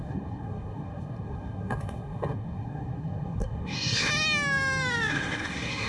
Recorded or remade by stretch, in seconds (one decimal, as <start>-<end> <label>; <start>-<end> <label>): 0.0-4.1 remade; 4.1-5.1 recorded; 5.1-5.9 remade